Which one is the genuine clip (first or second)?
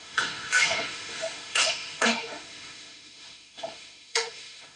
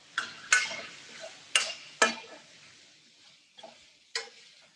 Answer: second